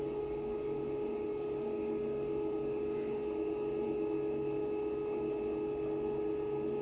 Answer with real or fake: real